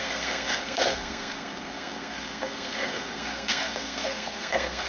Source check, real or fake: fake